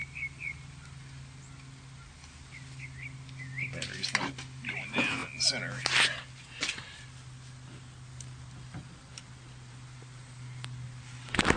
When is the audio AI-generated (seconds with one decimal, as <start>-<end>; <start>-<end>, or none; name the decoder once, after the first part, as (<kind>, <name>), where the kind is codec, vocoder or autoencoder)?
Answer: 0.0-5.2 (vocoder, BigVGAN v2); 9.7-11.6